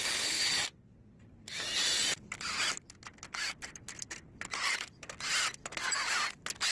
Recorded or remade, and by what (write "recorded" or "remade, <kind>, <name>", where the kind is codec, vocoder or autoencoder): recorded